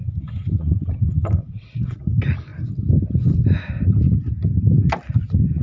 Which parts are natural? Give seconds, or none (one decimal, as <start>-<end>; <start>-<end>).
2.0-5.6